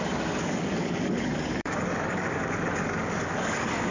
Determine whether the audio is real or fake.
fake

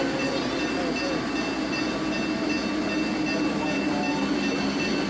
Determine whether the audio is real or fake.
real